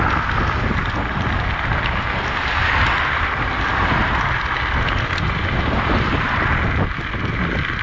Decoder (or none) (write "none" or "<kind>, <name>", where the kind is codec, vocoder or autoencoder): none